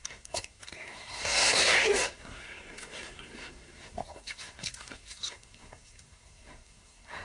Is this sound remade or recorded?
remade